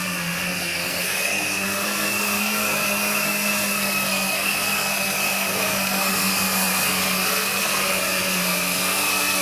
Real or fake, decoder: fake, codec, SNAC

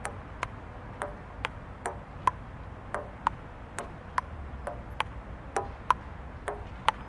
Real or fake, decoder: real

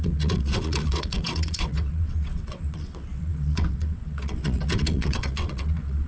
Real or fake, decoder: fake, vocoder, WaveNeXt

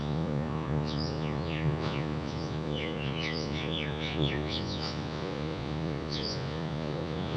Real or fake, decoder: fake, vocoder, Vocos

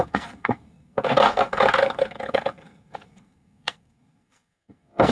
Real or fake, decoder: fake, codec, SNAC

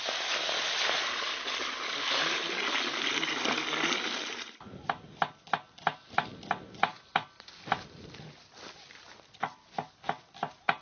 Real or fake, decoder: real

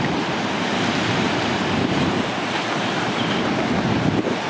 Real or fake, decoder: fake, vocoder, BigVGAN v2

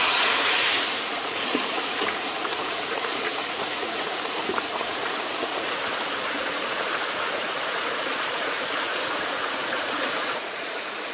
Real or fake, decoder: fake, vocoder, Vocos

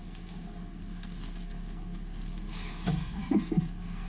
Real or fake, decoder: fake, codec, SNAC